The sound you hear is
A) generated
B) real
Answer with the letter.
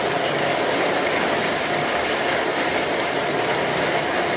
B